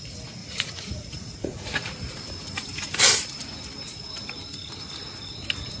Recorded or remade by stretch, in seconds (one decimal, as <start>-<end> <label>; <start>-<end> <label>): 0.0-0.4 recorded; 0.4-2.2 remade; 2.2-5.8 recorded